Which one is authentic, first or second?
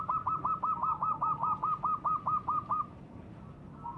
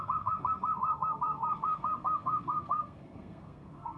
first